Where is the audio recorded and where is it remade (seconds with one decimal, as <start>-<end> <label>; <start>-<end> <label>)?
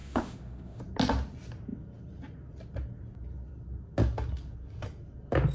0.0-0.8 remade; 0.8-5.5 recorded